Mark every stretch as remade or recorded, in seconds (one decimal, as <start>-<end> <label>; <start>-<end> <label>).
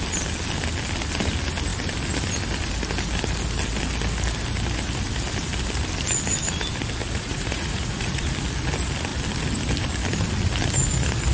0.0-7.0 recorded; 7.0-8.3 remade; 8.3-11.3 recorded